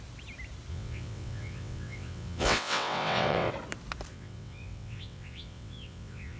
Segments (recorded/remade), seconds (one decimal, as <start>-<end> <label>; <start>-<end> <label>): 0.0-0.7 recorded; 0.7-3.5 remade; 3.5-4.1 recorded; 4.1-6.4 remade